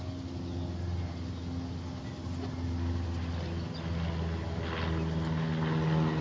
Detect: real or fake real